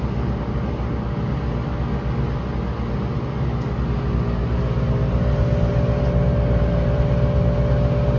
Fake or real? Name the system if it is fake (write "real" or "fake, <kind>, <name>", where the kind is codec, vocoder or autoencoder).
real